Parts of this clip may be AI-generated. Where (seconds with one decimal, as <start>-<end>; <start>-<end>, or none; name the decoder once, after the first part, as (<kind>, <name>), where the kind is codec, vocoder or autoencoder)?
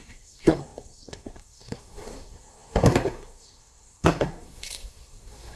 0.0-5.6 (codec, SNAC)